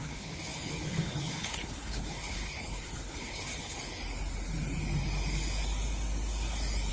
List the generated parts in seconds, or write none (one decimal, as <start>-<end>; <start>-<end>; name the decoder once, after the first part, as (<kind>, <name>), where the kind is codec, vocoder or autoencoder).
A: 0.0-4.0 (codec, HILCodec)